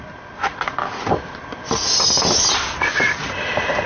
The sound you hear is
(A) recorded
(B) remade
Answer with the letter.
A